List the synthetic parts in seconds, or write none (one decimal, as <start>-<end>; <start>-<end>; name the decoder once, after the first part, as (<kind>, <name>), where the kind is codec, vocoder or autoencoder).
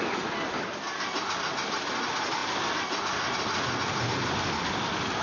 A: none